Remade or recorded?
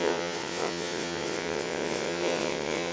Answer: remade